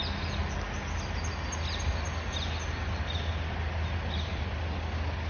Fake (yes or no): no